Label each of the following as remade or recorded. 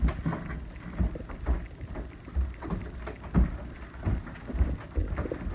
recorded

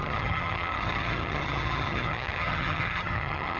remade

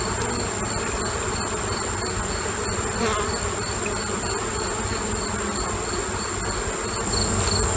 recorded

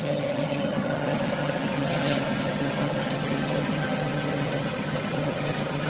remade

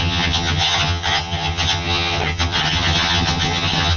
remade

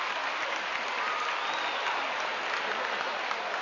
recorded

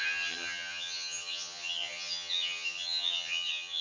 remade